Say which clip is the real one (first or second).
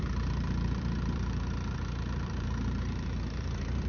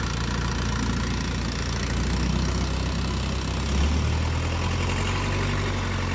second